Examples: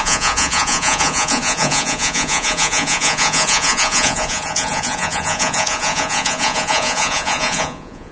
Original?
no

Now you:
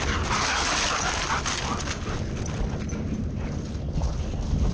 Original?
yes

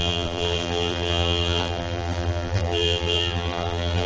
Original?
no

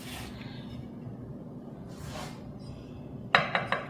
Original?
yes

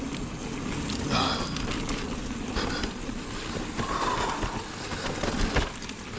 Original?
yes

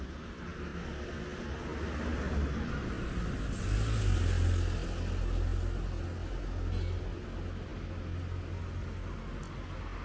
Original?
yes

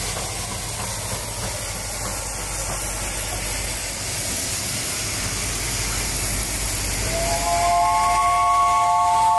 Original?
yes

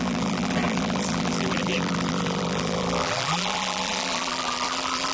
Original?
no